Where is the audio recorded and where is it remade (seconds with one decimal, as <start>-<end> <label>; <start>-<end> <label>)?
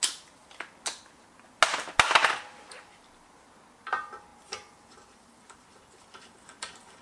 0.0-7.0 recorded